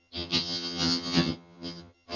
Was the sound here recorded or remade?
remade